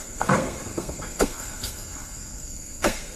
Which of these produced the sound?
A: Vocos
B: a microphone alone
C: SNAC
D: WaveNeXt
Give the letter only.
C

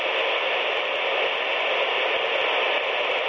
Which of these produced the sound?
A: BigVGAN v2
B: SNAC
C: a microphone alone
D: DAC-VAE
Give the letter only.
C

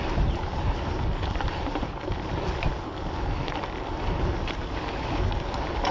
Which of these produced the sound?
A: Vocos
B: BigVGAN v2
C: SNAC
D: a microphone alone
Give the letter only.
D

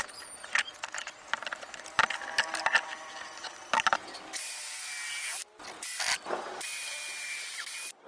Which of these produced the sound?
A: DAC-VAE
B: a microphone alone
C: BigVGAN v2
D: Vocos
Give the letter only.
B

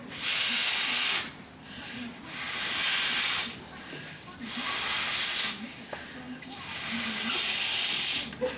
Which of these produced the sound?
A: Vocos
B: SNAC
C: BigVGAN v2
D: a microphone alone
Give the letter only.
D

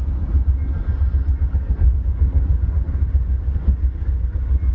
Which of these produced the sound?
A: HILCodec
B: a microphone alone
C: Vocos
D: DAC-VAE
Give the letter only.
B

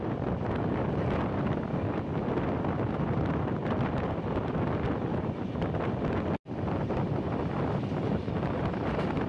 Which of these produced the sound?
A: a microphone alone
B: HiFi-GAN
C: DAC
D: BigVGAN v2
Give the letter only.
A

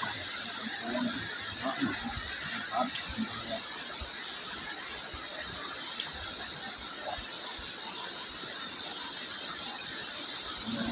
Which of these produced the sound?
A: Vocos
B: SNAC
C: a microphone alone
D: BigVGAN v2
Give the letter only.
D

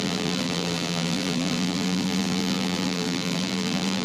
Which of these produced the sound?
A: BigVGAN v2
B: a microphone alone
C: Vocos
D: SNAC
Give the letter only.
A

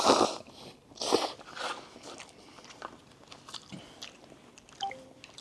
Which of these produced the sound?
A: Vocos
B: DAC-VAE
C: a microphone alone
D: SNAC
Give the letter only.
C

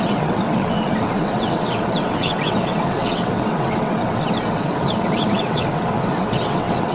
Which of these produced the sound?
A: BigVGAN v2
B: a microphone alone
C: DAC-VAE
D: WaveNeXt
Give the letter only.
D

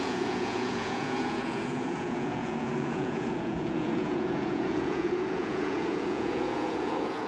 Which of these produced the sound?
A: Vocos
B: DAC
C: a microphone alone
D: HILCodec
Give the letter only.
A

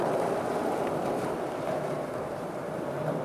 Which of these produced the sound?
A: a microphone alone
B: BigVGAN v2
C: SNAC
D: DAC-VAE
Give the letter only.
B